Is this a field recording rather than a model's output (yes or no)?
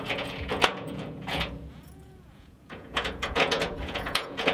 no